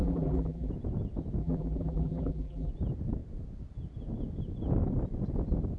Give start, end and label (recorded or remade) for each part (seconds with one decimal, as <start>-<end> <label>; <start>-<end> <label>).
0.0-0.7 remade; 0.7-1.4 recorded; 1.4-2.7 remade; 2.7-5.8 recorded